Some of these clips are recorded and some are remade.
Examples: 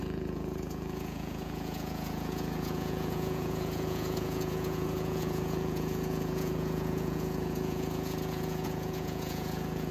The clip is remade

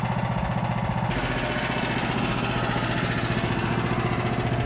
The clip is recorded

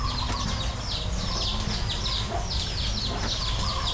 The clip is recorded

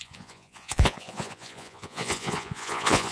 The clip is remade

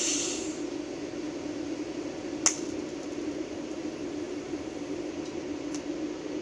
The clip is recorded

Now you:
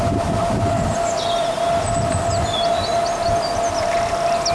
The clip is recorded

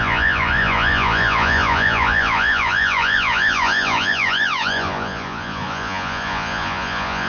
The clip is remade